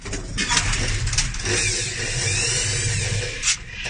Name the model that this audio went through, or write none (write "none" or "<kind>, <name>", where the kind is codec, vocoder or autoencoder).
none